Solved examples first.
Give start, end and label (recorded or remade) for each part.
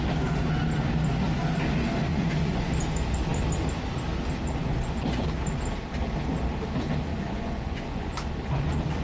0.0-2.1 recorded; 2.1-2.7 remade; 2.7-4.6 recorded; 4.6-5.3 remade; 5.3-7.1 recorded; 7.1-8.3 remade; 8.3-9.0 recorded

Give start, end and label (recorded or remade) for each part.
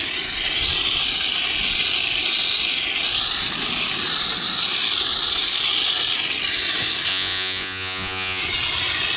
0.0-7.1 recorded; 7.1-8.4 remade; 8.4-9.2 recorded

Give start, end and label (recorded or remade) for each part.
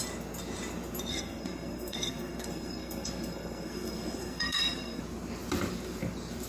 0.0-1.1 recorded; 1.1-5.0 remade; 5.0-6.5 recorded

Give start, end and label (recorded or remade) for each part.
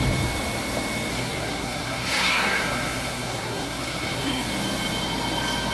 0.0-1.1 recorded; 1.1-4.5 remade; 4.5-5.7 recorded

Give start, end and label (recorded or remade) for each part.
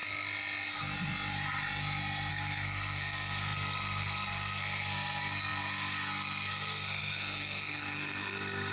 0.0-2.3 recorded; 2.3-8.7 remade